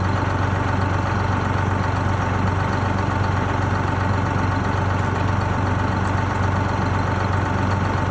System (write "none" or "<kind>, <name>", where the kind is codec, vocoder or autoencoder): none